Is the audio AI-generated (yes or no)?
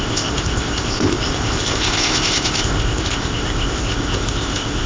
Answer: yes